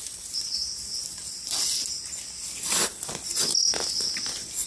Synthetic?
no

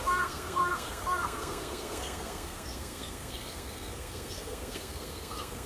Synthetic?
yes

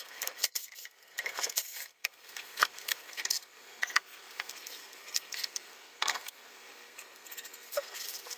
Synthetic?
yes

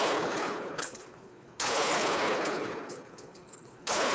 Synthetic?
yes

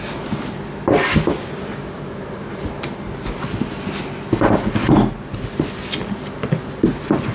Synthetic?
no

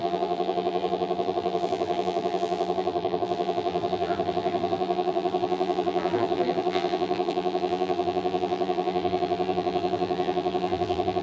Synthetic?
yes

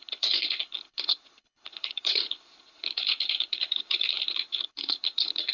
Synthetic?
yes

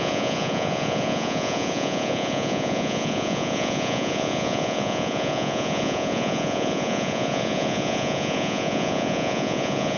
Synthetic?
yes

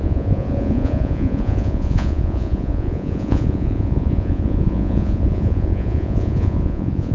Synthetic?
yes